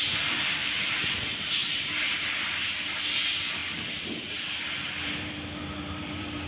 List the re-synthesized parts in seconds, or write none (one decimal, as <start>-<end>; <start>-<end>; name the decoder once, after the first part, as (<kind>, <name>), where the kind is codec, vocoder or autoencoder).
0.0-0.6 (vocoder, BigVGAN v2); 1.7-6.5